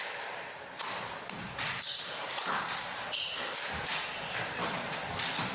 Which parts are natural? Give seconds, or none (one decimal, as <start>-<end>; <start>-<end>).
0.0-2.2; 3.0-4.6